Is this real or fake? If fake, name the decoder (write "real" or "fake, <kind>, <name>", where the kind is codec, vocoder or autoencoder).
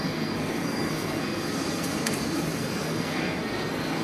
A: fake, codec, SNAC